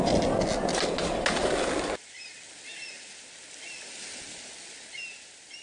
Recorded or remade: recorded